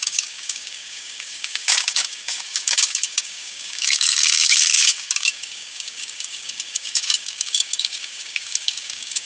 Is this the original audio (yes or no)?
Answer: no